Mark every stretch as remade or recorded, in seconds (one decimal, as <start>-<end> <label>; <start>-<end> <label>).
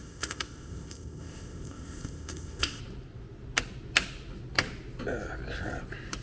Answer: 0.0-2.8 remade; 2.8-6.2 recorded